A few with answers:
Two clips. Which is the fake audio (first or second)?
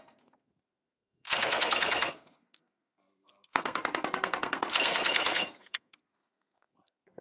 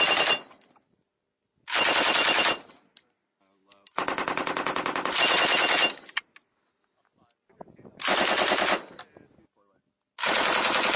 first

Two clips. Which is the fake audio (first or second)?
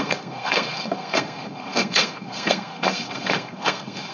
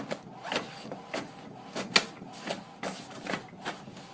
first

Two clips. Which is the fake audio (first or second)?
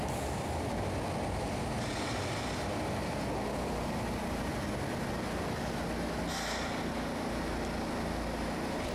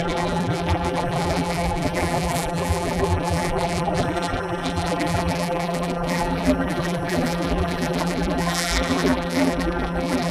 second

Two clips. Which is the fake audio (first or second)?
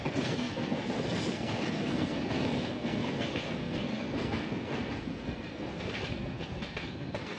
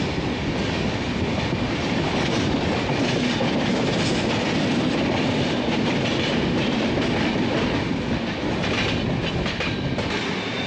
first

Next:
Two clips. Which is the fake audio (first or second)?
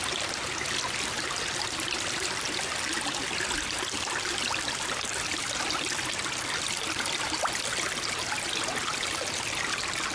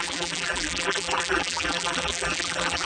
second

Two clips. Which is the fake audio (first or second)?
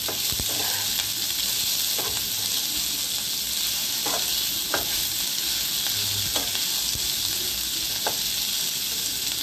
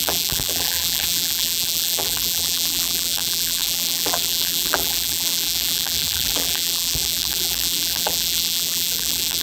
second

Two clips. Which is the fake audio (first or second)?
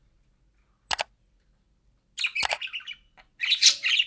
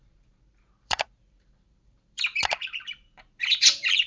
second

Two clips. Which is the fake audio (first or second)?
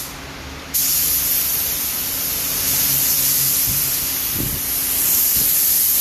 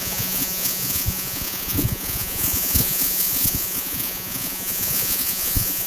second